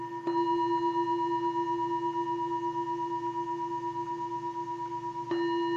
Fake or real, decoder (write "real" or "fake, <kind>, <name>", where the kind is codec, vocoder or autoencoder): real